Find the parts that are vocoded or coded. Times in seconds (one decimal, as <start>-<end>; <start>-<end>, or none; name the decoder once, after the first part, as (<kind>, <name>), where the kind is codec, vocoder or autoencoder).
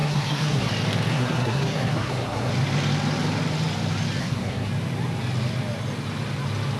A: 0.0-0.7 (codec, SNAC); 1.1-2.5; 4.2-4.7